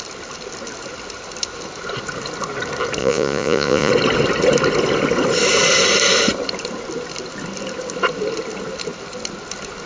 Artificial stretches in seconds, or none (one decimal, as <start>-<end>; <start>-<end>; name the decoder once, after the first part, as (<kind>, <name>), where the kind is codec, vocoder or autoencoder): 3.0-3.9 (vocoder, Vocos)